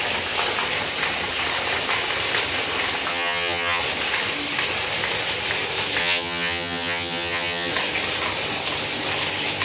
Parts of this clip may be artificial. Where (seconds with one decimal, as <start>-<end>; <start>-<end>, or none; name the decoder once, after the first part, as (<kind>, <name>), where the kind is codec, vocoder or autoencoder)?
3.1-3.8 (vocoder, HiFi-GAN); 6.0-7.7